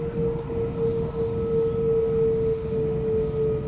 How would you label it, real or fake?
real